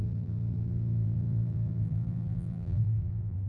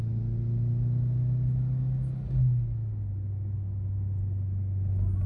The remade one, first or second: first